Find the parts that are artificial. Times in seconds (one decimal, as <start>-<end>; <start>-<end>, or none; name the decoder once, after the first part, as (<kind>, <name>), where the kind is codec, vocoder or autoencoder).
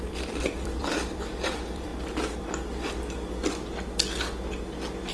0.0-1.9 (vocoder, BigVGAN v2)